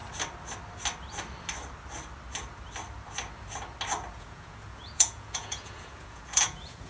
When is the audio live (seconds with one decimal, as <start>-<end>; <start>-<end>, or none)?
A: 0.0-4.1